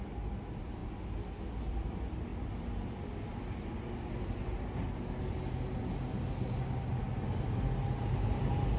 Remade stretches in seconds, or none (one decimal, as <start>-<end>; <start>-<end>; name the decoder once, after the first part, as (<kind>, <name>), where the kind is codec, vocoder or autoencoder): none